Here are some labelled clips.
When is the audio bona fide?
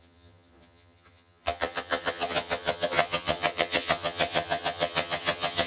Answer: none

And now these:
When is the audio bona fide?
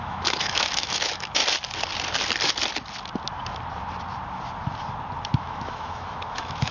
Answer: 1.4-5.4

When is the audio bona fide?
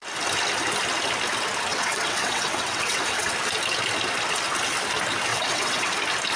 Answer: 0.0-1.7; 3.3-5.3; 5.9-6.4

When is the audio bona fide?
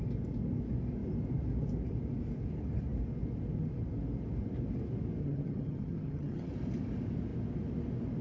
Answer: 0.0-5.2; 6.5-8.2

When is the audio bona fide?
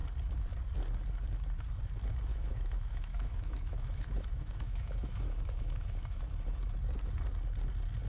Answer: 0.0-2.3; 6.2-8.1